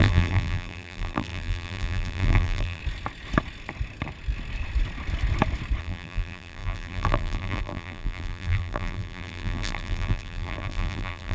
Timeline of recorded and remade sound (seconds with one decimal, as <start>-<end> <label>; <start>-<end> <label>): 0.0-2.8 remade; 2.8-5.8 recorded; 5.8-11.3 remade